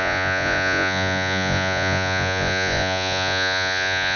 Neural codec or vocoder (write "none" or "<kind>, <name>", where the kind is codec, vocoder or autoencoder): vocoder, Vocos